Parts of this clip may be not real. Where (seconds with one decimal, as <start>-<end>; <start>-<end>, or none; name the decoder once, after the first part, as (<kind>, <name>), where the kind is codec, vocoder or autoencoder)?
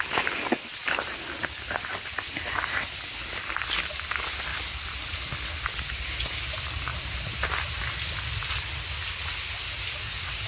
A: 0.8-1.4 (vocoder, BigVGAN v2); 4.5-5.8; 6.9-7.5